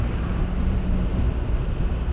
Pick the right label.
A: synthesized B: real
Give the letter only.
B